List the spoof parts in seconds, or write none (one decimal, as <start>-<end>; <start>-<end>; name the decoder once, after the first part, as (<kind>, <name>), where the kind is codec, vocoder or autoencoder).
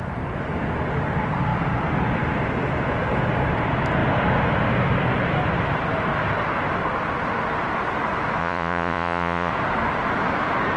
8.4-9.5 (vocoder, Vocos)